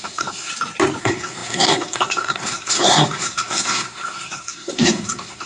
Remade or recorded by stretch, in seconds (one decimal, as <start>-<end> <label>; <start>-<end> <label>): 0.0-0.5 remade; 0.5-1.0 recorded; 1.0-5.5 remade